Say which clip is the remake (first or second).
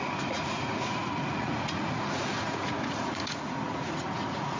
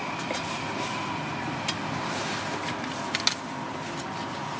first